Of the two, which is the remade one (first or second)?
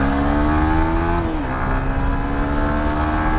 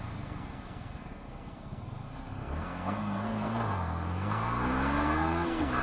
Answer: second